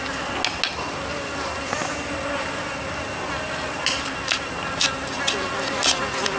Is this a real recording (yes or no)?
yes